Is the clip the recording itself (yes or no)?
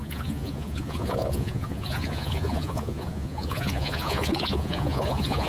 no